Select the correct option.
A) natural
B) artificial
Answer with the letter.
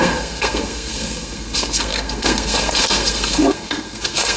B